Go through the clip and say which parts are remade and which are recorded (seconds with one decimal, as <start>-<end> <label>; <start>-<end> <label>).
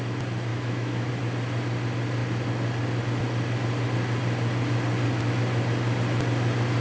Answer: 0.0-0.5 recorded; 0.5-1.1 remade; 1.1-6.8 recorded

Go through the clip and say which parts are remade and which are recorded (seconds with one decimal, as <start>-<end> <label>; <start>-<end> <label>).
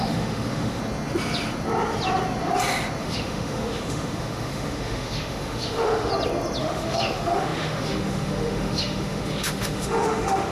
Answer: 0.0-0.8 remade; 0.8-3.0 recorded; 3.0-6.1 remade; 6.1-6.6 recorded; 6.6-10.5 remade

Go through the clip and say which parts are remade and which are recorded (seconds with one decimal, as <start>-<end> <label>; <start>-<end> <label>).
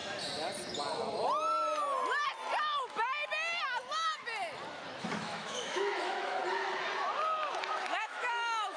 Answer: 0.0-5.0 recorded; 5.0-6.4 remade; 6.4-7.7 recorded; 7.7-8.8 remade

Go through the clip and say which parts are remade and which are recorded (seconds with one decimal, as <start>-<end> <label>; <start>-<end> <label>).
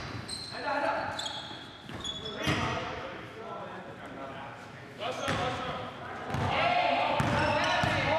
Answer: 0.0-2.8 recorded; 2.8-3.4 remade; 3.4-4.6 recorded; 4.6-5.2 remade; 5.2-8.2 recorded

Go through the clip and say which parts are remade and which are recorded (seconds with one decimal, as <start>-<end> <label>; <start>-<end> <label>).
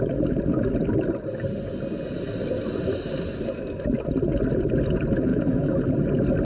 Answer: 0.0-5.3 recorded; 5.3-5.8 remade; 5.8-6.4 recorded